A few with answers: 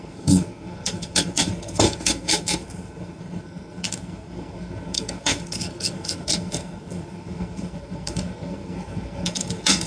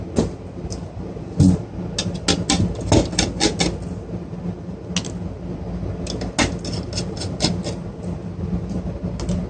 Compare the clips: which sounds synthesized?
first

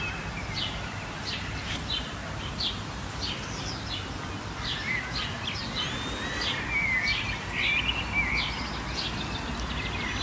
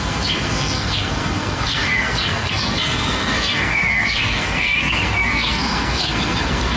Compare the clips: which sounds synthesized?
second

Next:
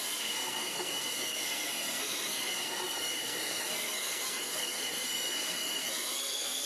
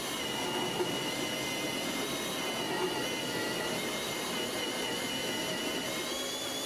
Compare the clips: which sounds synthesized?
first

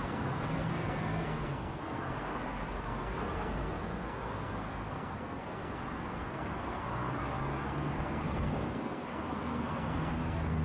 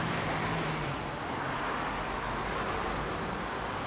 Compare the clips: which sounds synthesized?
first